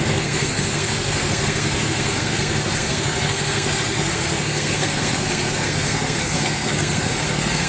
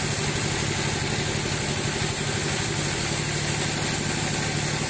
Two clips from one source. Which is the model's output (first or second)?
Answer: first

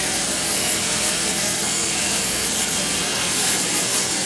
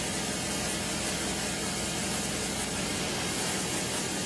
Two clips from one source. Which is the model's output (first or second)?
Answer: first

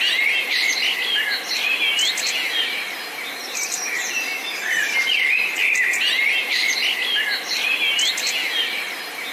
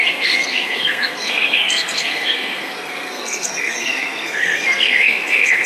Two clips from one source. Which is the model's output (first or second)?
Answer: second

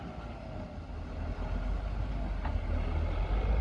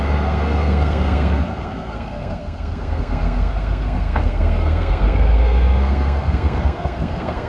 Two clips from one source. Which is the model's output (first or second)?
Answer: second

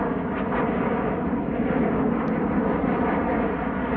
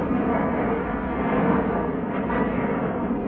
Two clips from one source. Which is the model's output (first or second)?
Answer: second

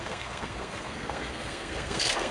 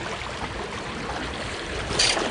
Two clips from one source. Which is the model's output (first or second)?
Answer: first